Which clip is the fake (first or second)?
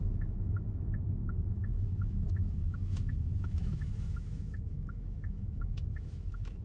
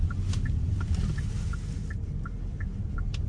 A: first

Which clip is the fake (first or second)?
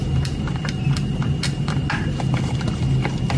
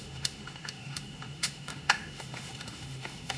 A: second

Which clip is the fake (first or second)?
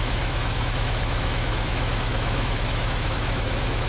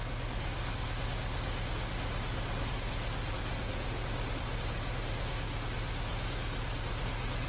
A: first